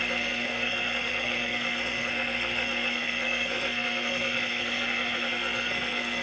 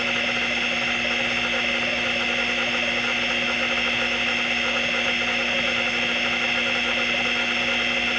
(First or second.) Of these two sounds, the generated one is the first